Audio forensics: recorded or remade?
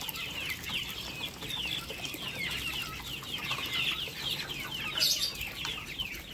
recorded